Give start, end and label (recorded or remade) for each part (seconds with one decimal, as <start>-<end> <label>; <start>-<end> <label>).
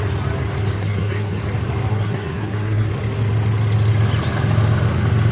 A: 0.0-0.8 recorded; 0.8-1.4 remade; 1.4-1.9 recorded; 1.9-2.9 remade; 2.9-5.3 recorded